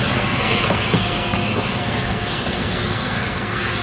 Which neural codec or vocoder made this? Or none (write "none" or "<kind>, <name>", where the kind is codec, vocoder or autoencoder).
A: codec, SNAC